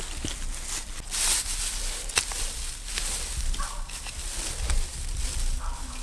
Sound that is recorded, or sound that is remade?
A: recorded